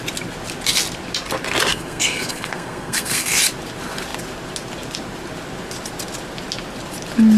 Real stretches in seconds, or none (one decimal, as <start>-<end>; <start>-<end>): 0.0-1.7; 3.4-7.4